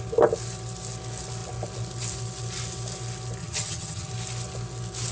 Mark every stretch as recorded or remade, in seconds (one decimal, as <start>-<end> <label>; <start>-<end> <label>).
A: 0.0-3.4 recorded; 3.4-4.1 remade; 4.1-5.1 recorded